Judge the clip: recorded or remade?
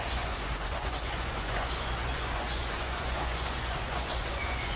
remade